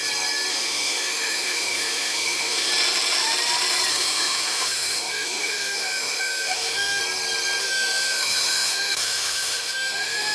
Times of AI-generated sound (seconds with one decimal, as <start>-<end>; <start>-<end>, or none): 0.5-2.7; 3.9-7.0; 7.6-10.3